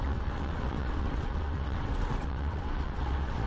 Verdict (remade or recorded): remade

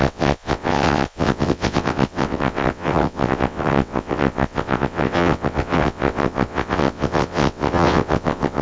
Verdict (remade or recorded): remade